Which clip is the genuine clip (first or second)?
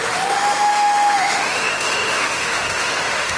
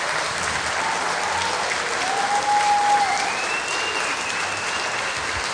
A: second